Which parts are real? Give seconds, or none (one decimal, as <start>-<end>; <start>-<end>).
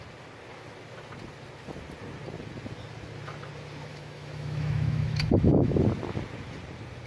0.0-3.9; 5.7-7.1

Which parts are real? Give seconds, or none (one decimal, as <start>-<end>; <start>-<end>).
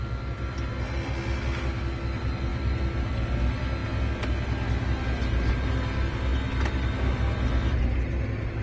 0.0-8.6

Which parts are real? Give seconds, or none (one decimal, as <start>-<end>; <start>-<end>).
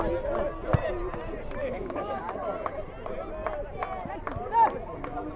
0.0-1.6; 2.2-5.4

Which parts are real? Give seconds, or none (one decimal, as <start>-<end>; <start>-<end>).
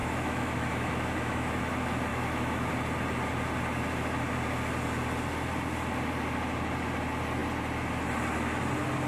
1.6-2.1; 2.7-9.1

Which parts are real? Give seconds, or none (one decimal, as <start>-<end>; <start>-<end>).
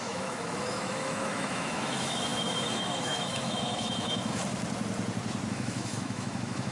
4.4-5.5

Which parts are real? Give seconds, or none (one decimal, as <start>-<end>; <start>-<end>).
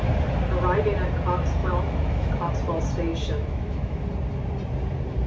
0.0-1.6; 2.5-3.1; 4.0-5.3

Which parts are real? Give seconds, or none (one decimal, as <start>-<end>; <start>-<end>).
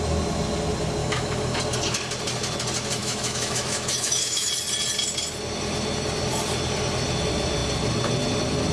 0.0-1.0; 1.6-3.0; 4.5-8.7